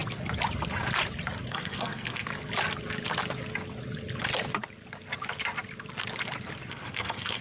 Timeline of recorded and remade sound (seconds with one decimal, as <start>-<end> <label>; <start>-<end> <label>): 0.0-1.5 recorded; 1.5-2.3 remade; 2.3-6.7 recorded; 6.7-7.4 remade